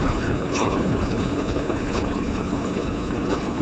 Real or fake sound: fake